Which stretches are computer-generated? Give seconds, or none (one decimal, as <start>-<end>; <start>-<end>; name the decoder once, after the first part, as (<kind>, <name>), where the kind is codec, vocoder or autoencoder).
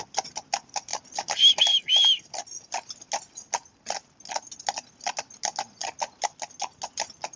none